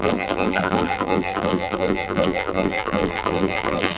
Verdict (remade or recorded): remade